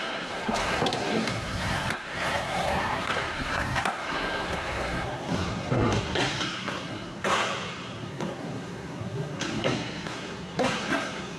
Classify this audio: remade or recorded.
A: remade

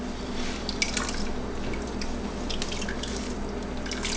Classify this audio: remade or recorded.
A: recorded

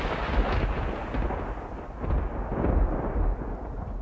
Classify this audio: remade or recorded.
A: recorded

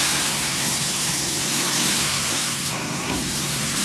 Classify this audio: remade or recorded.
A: remade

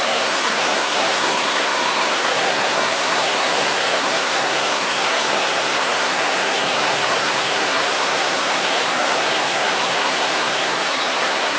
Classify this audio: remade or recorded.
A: remade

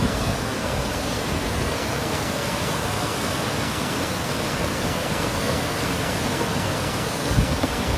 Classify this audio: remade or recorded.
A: remade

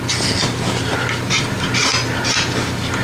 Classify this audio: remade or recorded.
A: recorded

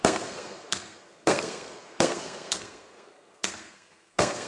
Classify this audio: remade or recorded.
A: remade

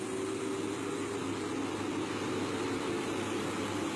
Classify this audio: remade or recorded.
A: recorded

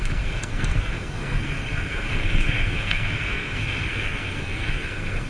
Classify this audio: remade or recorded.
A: remade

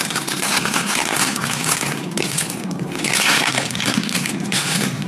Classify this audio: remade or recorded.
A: remade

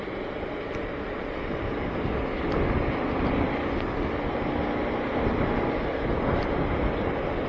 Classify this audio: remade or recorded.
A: recorded